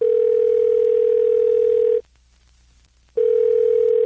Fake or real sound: real